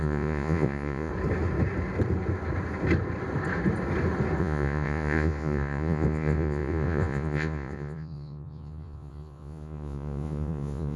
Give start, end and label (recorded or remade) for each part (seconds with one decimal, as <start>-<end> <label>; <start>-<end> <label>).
0.0-1.1 remade; 1.1-4.4 recorded; 4.4-11.0 remade

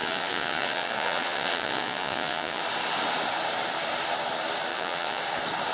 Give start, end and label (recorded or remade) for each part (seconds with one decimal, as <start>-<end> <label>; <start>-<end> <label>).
0.0-2.6 remade; 2.6-4.7 recorded; 4.7-5.2 remade; 5.2-5.7 recorded

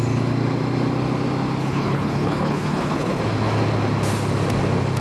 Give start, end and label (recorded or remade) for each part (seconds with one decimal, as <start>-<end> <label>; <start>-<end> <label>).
0.0-1.6 recorded; 1.6-3.2 remade; 3.2-5.0 recorded

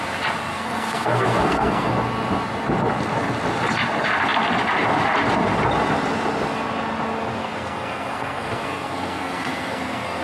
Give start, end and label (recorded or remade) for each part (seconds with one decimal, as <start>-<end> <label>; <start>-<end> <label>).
0.0-0.5 recorded; 0.5-1.9 remade; 1.9-7.4 recorded; 7.4-10.2 remade

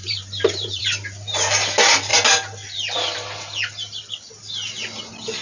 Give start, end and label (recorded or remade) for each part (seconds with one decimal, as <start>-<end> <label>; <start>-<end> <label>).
0.0-2.1 remade; 2.1-5.4 recorded

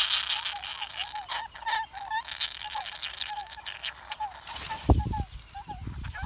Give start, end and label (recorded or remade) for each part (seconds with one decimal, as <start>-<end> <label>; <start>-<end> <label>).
0.0-6.3 recorded

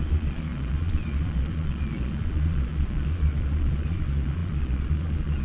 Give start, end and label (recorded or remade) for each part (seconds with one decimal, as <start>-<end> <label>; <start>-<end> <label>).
0.0-5.4 remade